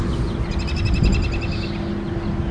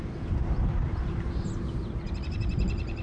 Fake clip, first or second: second